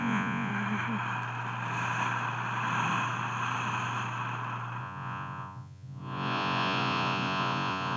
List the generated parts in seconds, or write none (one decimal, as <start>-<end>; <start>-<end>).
0.0-0.5; 4.8-8.0